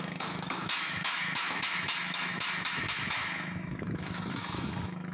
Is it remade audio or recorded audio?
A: remade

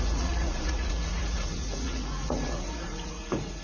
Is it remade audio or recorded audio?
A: remade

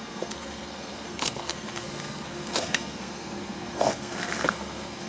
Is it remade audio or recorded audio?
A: remade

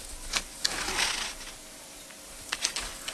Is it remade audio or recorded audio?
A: recorded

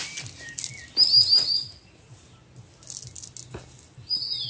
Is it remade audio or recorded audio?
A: recorded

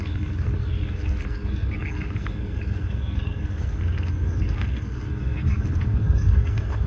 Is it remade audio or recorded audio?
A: remade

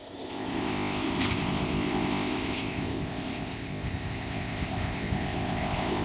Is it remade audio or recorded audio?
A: remade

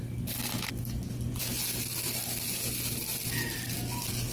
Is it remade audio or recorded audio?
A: recorded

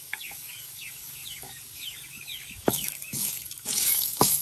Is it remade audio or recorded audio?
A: remade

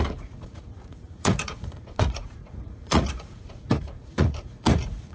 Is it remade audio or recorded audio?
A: remade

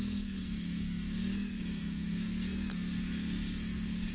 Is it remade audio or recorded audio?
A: remade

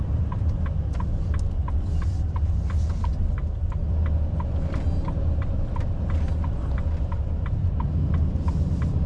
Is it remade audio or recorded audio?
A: recorded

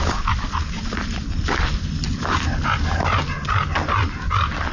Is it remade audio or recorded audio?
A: recorded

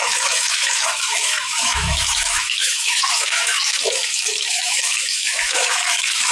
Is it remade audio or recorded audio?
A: remade